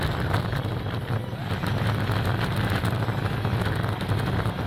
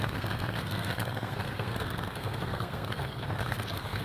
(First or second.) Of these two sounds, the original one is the first